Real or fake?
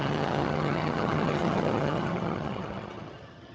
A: fake